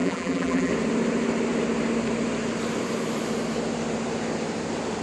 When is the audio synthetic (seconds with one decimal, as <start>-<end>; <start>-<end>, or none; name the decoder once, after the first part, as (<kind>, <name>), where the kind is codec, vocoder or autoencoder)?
0.0-0.7 (vocoder, BigVGAN v2)